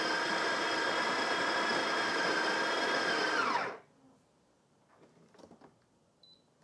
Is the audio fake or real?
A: real